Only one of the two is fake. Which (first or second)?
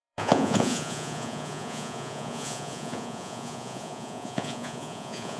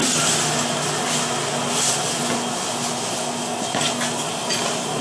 first